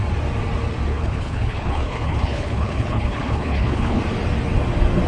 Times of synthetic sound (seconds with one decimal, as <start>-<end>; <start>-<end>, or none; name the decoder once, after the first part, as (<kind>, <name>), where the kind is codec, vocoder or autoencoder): 0.9-4.0 (codec, HILCodec)